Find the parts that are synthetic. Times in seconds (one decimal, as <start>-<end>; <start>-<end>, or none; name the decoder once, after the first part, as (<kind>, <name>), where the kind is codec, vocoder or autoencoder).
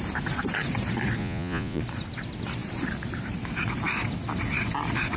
1.2-1.8 (vocoder, Vocos)